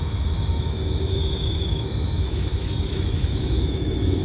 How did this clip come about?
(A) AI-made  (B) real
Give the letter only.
A